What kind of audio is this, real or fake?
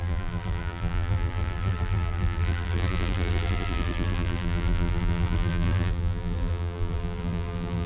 fake